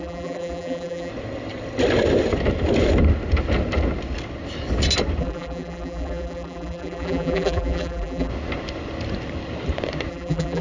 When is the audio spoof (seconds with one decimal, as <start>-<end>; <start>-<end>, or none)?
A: 0.0-1.1; 5.2-8.3; 10.1-10.6